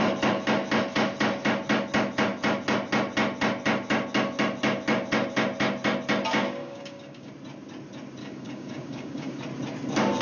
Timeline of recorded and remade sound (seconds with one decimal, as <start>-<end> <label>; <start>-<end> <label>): 0.0-6.6 recorded; 6.6-7.3 remade; 7.3-8.2 recorded; 8.2-9.4 remade; 9.4-10.2 recorded